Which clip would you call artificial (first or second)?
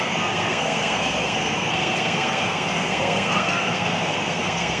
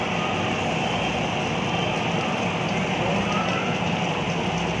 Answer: first